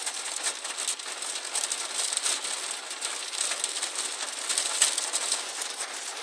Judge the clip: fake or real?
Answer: real